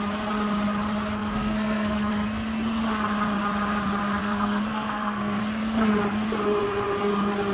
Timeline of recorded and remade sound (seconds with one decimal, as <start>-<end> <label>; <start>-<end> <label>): 0.0-1.2 recorded; 1.2-2.1 remade; 2.1-4.2 recorded; 4.2-5.4 remade; 5.4-7.5 recorded